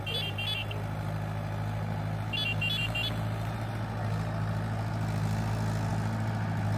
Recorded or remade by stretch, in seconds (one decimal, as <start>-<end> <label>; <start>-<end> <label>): 0.0-5.9 recorded; 5.9-6.8 remade